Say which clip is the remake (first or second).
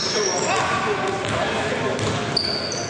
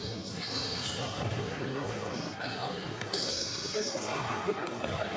second